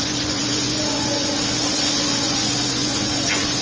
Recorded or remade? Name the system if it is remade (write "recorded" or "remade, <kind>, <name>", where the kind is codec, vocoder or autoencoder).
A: remade, vocoder, Vocos